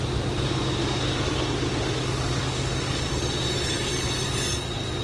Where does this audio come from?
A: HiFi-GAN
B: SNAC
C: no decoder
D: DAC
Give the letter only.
C